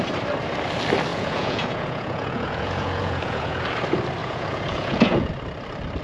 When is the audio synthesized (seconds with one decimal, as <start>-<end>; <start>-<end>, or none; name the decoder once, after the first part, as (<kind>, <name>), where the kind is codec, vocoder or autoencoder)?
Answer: 1.1-3.6 (vocoder, Vocos); 4.2-5.3